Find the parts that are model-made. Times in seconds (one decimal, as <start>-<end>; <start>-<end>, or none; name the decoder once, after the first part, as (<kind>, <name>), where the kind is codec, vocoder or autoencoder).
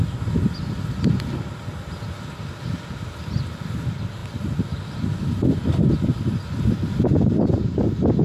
none